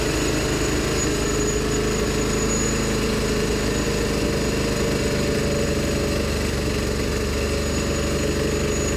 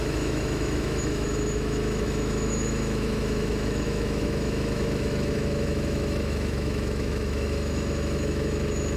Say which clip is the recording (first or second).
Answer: first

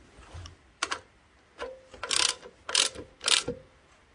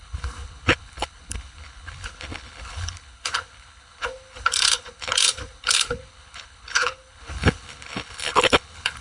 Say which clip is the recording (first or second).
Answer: first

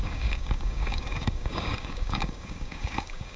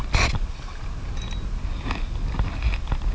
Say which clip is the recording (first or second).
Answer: second